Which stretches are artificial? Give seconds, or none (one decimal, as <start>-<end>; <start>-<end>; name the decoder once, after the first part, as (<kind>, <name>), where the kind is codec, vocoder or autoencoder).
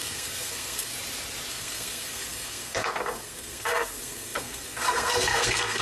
0.0-0.9 (codec, SNAC); 1.5-5.8